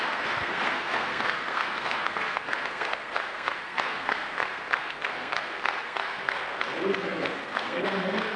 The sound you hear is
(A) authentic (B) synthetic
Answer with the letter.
B